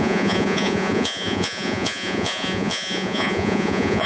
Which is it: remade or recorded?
remade